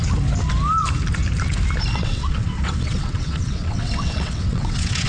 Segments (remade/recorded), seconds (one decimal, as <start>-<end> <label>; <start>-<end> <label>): 0.0-1.9 recorded; 1.9-5.1 remade